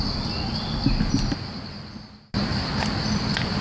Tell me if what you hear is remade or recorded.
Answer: recorded